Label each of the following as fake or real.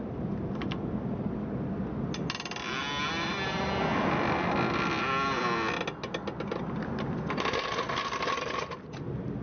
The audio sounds real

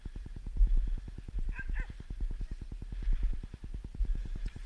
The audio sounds real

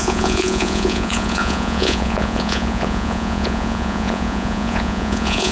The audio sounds fake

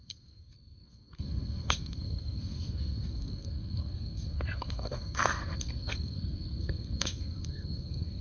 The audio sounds fake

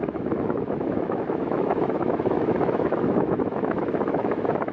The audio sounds fake